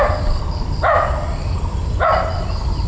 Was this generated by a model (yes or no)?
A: no